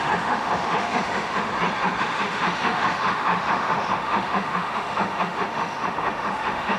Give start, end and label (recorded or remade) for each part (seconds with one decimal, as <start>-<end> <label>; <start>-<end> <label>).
0.0-1.5 remade; 1.5-2.0 recorded; 2.0-6.8 remade